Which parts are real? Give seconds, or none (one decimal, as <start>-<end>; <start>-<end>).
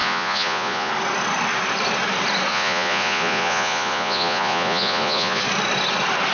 0.9-2.5; 5.4-6.3